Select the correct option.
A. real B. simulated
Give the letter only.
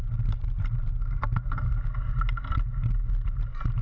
A